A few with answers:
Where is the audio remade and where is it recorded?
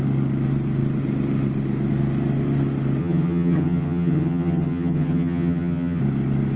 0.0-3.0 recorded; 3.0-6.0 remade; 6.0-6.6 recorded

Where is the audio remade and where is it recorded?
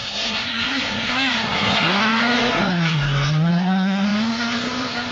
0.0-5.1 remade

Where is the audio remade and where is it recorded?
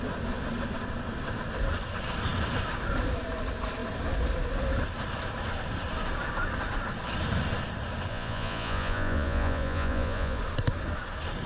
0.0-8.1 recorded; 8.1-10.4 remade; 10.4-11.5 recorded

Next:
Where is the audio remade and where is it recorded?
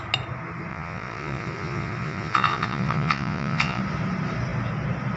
0.0-0.7 recorded; 0.7-3.8 remade; 3.8-5.2 recorded